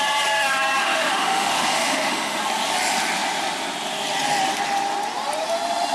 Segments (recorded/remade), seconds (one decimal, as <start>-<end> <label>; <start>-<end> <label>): 0.0-0.8 recorded; 0.8-2.4 remade; 2.4-5.9 recorded